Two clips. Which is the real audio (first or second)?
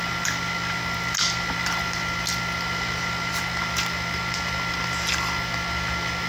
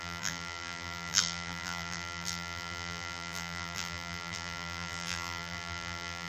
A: first